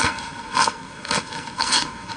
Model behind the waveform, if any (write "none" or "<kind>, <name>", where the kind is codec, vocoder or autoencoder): codec, SNAC